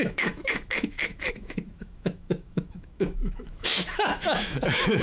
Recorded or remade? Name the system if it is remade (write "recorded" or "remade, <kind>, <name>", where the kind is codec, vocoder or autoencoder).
remade, autoencoder, DAC-VAE